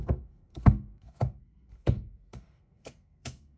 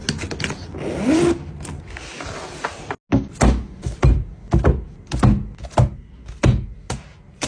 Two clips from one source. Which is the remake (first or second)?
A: first